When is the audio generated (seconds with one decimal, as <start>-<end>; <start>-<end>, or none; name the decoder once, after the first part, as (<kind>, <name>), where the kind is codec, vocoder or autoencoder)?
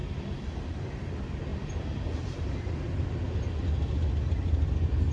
0.0-0.9 (vocoder, BigVGAN v2)